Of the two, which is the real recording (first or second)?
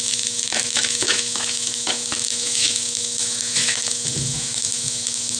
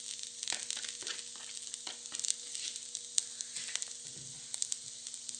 second